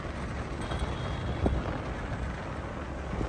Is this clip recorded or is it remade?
recorded